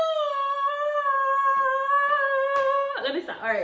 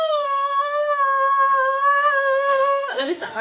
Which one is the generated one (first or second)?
second